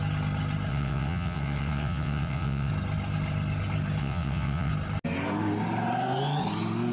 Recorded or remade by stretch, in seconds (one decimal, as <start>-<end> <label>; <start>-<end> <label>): 0.0-0.7 recorded; 0.7-2.7 remade; 2.7-4.0 recorded; 4.0-4.7 remade; 4.7-6.9 recorded